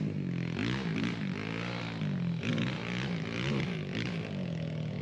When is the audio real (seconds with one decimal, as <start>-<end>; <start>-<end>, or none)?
0.0-5.0